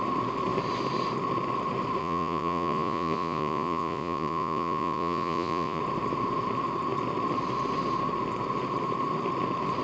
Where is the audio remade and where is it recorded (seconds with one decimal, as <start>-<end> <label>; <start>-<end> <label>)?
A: 0.0-2.0 recorded; 2.0-5.8 remade; 5.8-9.8 recorded